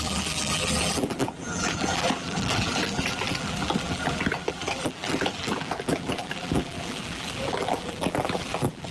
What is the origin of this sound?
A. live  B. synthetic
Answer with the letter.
B